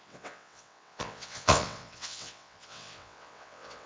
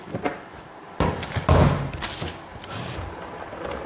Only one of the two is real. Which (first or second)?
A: second